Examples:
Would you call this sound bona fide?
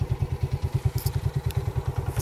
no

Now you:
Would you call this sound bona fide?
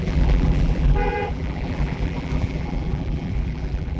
no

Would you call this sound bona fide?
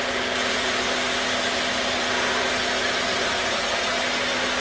yes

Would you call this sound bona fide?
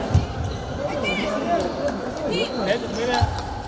yes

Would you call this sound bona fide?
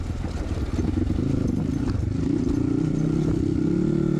yes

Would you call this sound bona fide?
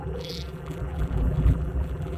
no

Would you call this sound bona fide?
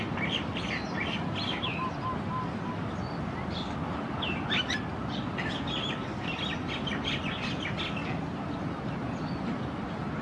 yes